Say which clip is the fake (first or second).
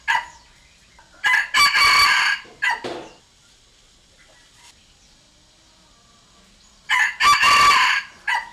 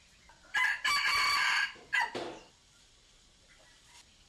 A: second